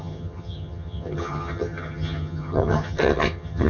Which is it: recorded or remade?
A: remade